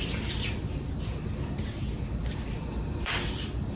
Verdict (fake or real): real